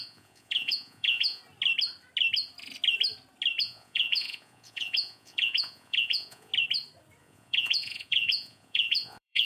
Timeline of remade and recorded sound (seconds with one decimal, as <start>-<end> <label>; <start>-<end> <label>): 0.0-1.4 remade; 1.4-3.6 recorded; 3.6-6.5 remade; 6.5-7.2 recorded; 7.2-9.4 remade